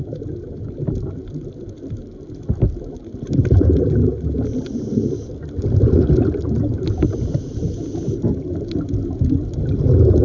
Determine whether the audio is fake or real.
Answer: real